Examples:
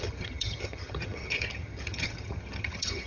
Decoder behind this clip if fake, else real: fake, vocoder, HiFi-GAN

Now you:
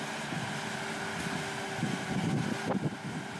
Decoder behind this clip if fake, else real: real